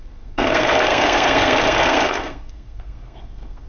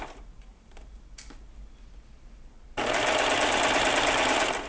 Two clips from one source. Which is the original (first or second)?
second